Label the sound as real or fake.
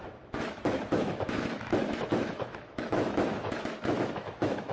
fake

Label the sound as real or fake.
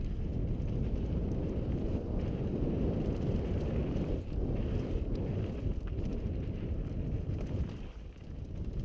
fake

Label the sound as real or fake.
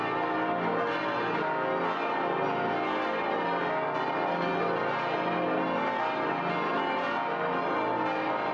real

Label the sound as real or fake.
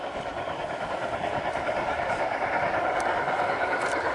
fake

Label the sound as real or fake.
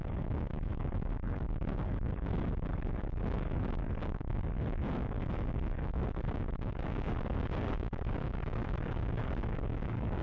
fake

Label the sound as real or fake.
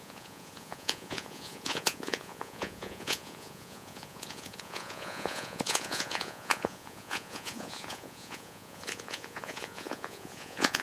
fake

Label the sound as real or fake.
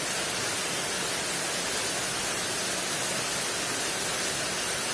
real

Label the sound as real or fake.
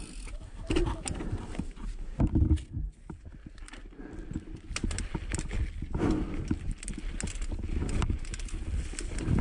real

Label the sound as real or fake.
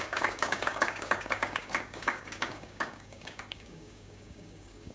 fake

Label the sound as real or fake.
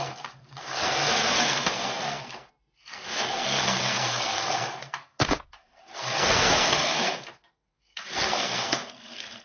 fake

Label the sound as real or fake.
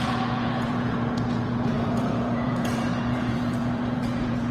fake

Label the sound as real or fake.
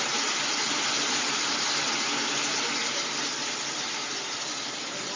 real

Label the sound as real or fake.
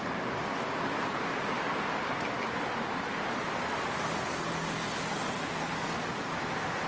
real